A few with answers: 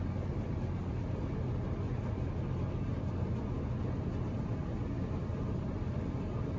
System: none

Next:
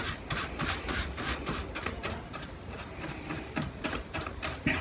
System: vocoder, BigVGAN v2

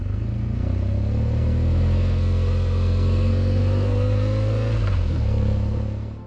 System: codec, SNAC